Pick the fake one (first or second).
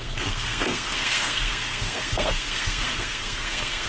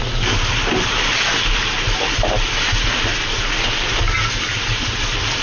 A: first